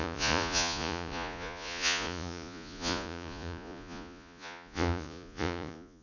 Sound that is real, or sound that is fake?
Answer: fake